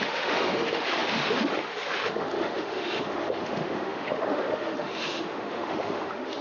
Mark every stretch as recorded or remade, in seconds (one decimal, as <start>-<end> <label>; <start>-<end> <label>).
0.0-6.4 remade

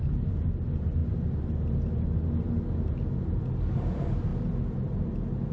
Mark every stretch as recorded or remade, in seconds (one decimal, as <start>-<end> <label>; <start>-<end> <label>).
0.0-5.5 recorded

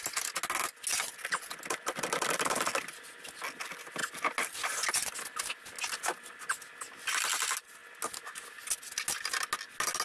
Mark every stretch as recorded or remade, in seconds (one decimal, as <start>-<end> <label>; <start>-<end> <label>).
0.0-10.0 recorded